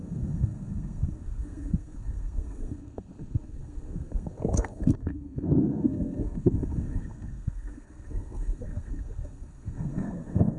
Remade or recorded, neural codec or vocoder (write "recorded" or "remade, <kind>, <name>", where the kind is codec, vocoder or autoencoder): remade, codec, SNAC